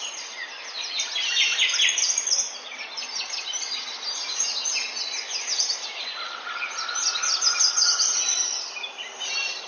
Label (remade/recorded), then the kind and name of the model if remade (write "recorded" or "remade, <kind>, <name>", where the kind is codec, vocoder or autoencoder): recorded